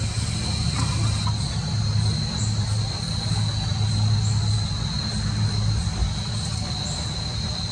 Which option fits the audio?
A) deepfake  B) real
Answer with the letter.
B